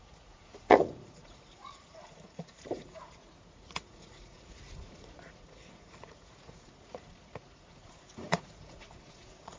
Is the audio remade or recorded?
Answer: remade